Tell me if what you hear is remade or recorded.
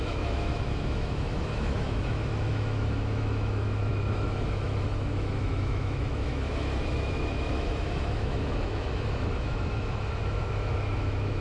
remade